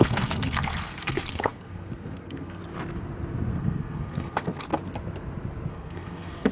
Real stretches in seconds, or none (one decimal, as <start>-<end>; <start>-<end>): 2.6-3.5; 4.7-5.7